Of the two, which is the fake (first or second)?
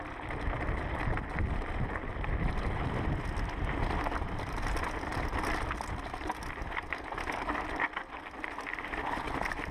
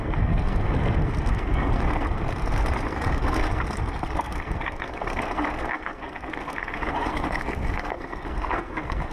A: second